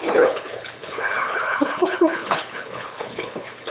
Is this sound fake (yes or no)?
yes